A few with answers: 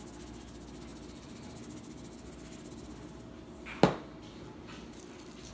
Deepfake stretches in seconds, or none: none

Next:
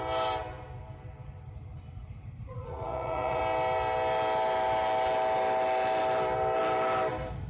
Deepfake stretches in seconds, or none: 2.4-3.4 (vocoder, Vocos)

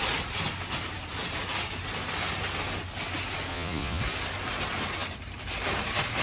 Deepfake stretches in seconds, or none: 3.5-4.0 (vocoder, Vocos)

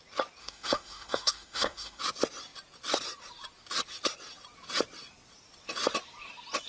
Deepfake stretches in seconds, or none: 0.4-2.0 (autoencoder, DAC-VAE)

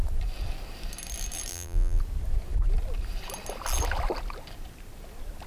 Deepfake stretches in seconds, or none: 1.5-2.0 (vocoder, BigVGAN v2)

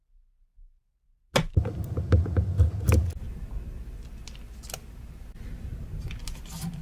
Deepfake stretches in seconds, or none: none